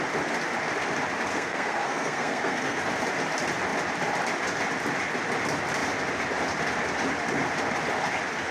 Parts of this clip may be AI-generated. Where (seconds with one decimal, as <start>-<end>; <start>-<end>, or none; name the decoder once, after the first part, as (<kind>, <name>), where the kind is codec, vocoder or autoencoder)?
1.3-2.8 (codec, SNAC)